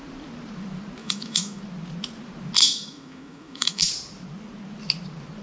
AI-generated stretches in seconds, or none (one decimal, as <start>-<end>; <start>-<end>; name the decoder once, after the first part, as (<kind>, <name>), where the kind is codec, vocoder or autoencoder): 1.0-1.6 (autoencoder, DAC-VAE); 2.6-3.9